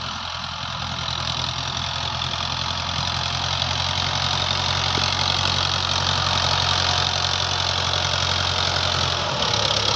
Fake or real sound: real